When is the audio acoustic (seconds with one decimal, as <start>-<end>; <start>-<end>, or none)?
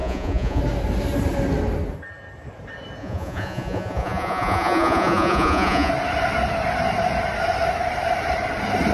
0.6-3.0; 5.9-8.9